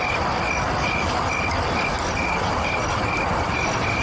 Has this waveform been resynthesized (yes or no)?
no